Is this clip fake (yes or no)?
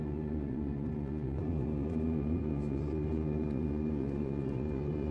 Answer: yes